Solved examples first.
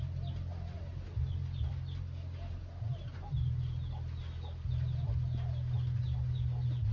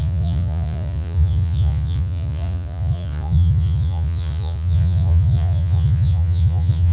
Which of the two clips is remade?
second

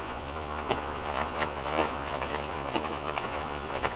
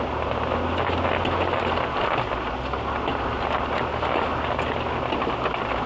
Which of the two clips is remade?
first